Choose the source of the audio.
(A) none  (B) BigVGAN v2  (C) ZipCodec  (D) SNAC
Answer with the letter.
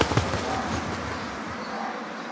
A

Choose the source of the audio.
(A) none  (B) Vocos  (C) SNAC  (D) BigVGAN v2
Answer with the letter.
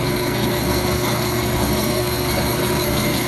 C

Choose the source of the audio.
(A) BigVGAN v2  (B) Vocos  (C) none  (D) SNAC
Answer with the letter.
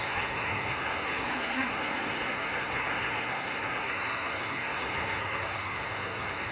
D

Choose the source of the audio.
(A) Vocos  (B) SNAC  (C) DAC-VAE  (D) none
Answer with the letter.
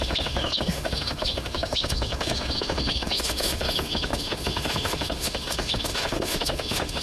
C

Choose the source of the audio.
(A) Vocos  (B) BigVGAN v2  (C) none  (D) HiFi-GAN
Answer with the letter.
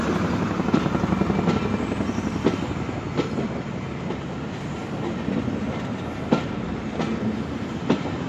C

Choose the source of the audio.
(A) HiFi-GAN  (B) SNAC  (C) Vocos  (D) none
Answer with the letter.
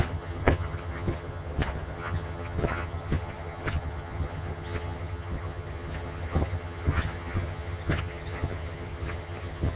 A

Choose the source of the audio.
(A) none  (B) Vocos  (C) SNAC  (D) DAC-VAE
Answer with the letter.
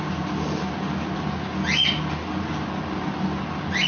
A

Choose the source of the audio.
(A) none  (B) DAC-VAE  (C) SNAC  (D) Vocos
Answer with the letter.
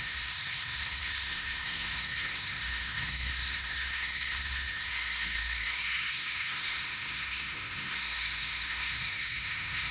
C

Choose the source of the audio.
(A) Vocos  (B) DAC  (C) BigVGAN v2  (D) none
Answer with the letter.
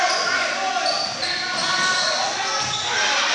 D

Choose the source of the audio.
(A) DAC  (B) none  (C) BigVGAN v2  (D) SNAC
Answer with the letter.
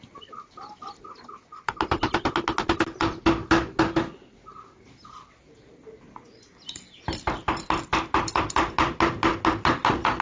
B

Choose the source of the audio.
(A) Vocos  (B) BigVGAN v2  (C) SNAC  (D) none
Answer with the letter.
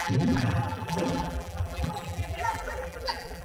B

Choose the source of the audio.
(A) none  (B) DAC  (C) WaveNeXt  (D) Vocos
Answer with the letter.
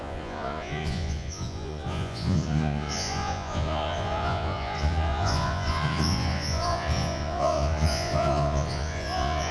D